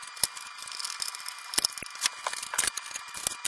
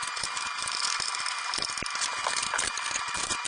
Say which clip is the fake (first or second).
second